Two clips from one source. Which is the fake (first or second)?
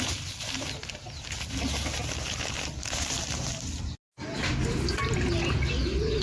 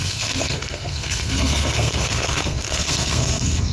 second